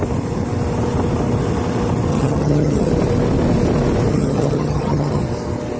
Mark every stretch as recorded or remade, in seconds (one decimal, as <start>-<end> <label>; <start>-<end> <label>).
0.0-2.1 recorded; 2.1-2.9 remade; 2.9-4.1 recorded; 4.1-5.2 remade; 5.2-5.8 recorded